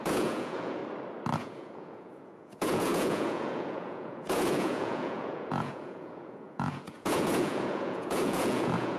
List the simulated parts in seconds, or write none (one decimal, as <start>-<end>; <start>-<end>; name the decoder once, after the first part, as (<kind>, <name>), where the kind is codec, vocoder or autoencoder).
0.0-0.8 (vocoder, Vocos); 1.4-9.0